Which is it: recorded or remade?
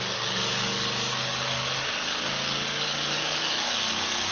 remade